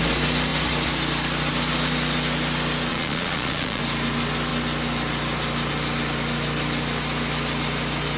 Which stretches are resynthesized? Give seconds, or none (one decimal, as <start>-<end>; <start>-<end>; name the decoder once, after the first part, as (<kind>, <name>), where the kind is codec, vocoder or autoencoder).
2.9-3.8 (vocoder, Vocos)